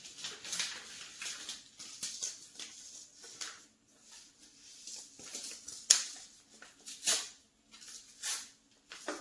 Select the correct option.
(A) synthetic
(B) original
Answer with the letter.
B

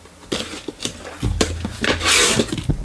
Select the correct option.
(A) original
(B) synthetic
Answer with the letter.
A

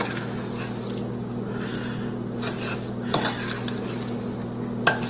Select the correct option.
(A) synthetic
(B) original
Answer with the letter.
B